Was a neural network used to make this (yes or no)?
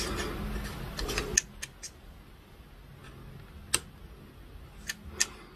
no